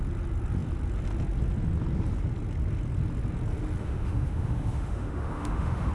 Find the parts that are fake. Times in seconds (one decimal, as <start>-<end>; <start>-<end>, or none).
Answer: 3.8-5.9